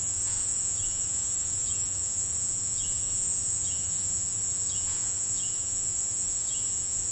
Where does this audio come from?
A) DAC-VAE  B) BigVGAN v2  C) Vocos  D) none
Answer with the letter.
C